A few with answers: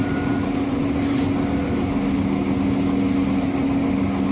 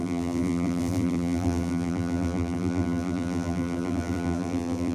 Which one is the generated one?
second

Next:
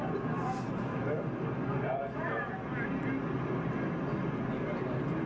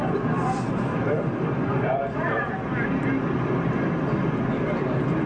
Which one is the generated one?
second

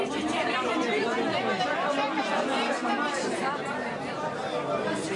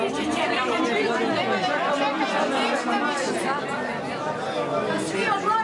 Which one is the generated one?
first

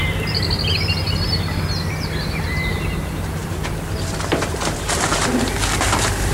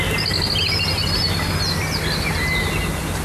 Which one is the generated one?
first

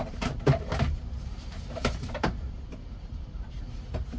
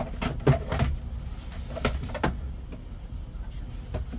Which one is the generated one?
first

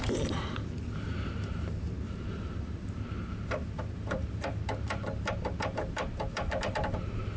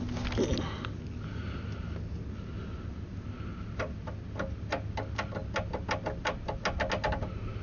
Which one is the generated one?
first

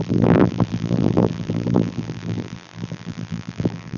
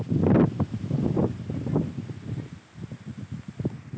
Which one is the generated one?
first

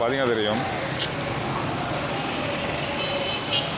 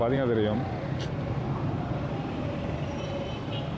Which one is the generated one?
second